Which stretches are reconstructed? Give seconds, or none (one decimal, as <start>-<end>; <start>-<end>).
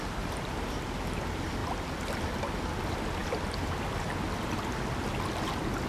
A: 3.2-4.1